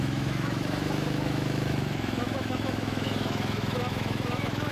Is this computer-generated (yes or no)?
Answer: yes